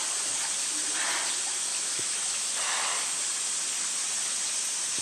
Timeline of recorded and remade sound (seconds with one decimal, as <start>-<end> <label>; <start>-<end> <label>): 0.0-1.7 recorded; 1.7-2.5 remade; 2.5-5.0 recorded

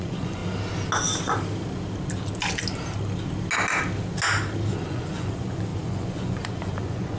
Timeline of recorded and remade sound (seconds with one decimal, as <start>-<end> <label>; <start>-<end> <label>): 0.0-0.4 remade; 0.4-4.7 recorded; 4.7-7.2 remade

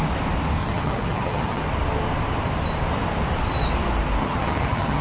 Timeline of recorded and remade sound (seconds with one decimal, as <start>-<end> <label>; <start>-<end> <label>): 0.0-0.6 recorded; 0.6-1.6 remade; 1.6-4.2 recorded; 4.2-5.0 remade